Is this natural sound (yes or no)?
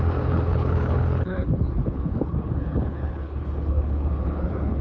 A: no